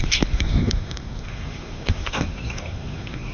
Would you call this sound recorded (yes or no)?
no